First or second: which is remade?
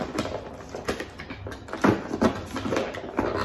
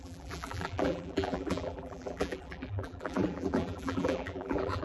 second